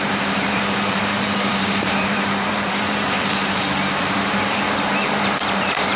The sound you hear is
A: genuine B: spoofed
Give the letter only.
B